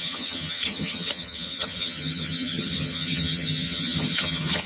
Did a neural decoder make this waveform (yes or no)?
yes